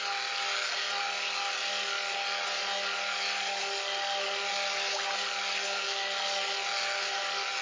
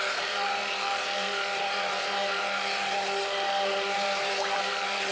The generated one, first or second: second